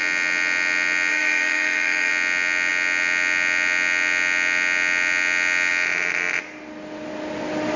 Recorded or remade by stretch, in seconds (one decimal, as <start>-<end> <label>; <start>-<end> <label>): 0.0-1.1 recorded; 1.1-2.1 remade; 2.1-7.8 recorded